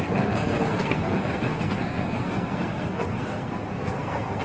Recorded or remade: remade